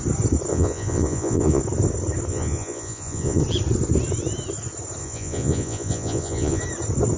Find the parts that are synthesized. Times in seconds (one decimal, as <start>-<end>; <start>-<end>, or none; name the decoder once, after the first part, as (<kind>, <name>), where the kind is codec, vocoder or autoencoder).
0.5-1.6 (vocoder, Vocos); 2.3-3.4; 5.0-6.6